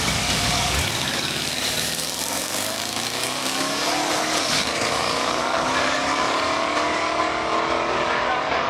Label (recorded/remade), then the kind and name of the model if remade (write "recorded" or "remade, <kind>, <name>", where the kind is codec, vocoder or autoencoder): remade, codec, DAC